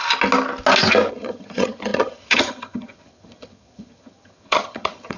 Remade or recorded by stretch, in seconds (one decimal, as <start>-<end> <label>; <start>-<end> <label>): 0.0-1.1 recorded; 1.1-5.2 remade